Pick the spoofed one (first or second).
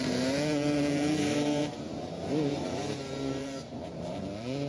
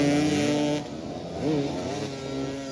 first